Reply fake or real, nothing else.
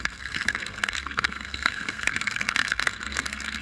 fake